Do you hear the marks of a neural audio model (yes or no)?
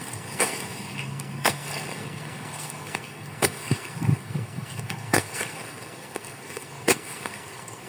yes